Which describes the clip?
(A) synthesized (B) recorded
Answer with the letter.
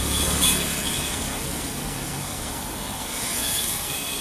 A